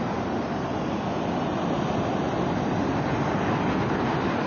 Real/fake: real